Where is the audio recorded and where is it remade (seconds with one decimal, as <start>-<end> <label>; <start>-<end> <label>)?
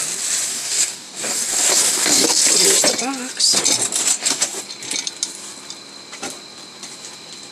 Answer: 0.0-0.5 recorded; 0.5-2.4 remade; 2.4-4.1 recorded; 4.1-4.6 remade; 4.6-7.5 recorded